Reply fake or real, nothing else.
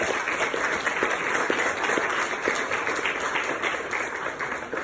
real